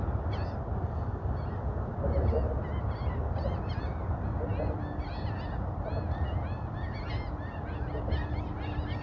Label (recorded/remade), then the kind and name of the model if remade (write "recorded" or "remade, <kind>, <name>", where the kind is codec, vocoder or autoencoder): recorded